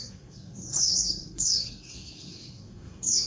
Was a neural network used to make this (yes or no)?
yes